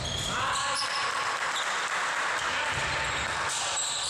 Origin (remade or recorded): recorded